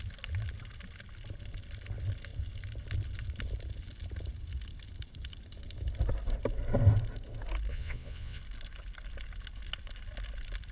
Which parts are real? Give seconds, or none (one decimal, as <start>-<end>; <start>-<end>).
0.0-7.7; 8.4-10.7